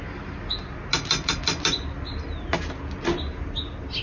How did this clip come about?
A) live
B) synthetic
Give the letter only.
A